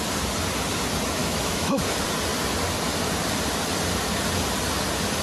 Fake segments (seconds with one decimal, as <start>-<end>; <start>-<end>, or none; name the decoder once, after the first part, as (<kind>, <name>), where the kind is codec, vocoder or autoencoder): 1.2-1.8 (autoencoder, DAC-VAE)